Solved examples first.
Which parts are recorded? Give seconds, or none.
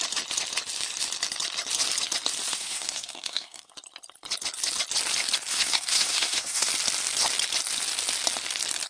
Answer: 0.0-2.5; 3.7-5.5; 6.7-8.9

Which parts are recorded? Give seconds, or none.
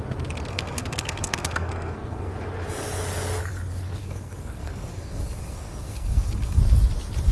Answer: 0.0-0.5; 2.3-4.0; 6.6-7.3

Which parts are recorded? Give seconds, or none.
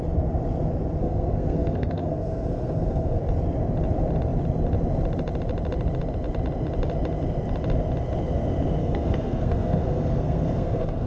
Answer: 0.0-1.0; 3.2-8.8